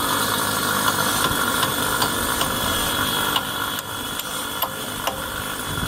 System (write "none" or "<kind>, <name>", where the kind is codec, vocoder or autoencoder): none